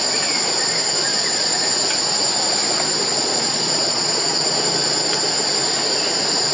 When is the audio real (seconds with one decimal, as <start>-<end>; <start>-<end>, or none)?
0.0-1.1; 1.7-3.1; 4.5-6.5